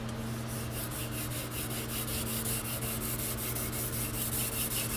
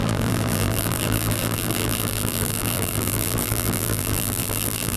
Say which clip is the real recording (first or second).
first